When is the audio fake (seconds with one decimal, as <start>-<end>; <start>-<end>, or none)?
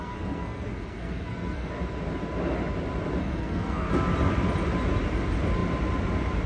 0.0-1.7; 3.2-3.9